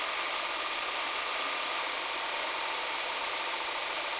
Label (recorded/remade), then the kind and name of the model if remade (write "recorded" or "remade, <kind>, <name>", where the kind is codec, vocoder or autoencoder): remade, vocoder, BigVGAN v2